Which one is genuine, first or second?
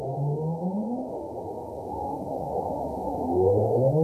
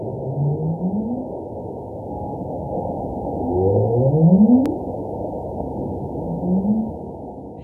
second